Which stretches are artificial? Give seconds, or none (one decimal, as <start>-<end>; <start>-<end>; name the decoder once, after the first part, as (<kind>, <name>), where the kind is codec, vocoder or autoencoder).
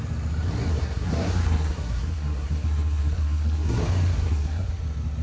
0.7-3.8 (codec, SNAC); 4.2-4.7